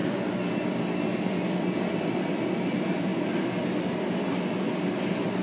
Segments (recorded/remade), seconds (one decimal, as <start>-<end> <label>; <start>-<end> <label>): 0.0-5.4 recorded